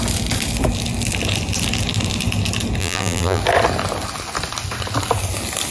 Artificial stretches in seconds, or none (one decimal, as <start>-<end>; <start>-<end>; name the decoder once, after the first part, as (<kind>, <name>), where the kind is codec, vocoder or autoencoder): 2.8-3.4 (vocoder, BigVGAN v2)